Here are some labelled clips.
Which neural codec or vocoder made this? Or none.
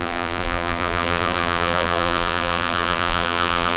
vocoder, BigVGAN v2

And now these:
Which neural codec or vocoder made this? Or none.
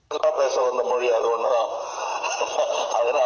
vocoder, BigVGAN v2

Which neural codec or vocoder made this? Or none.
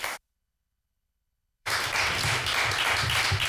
vocoder, BigVGAN v2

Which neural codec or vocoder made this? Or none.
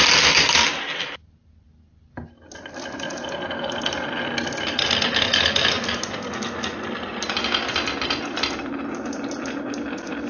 none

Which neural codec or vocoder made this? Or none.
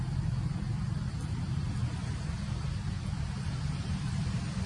none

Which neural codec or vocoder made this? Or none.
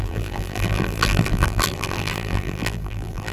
vocoder, BigVGAN v2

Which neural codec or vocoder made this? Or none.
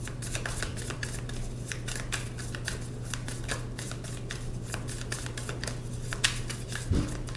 none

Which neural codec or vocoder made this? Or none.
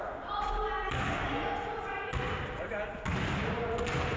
none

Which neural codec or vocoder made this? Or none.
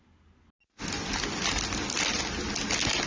none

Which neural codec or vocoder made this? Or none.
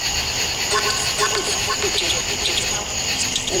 vocoder, BigVGAN v2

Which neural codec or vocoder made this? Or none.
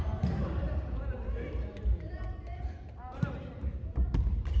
vocoder, BigVGAN v2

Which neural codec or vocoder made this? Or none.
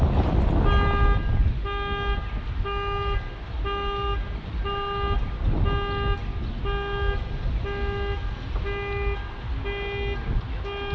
none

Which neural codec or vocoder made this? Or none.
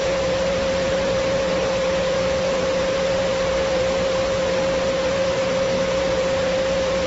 none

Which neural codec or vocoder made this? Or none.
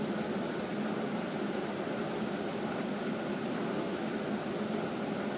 none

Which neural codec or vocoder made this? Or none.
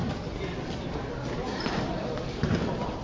vocoder, BigVGAN v2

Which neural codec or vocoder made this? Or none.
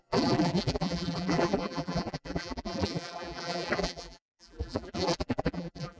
vocoder, BigVGAN v2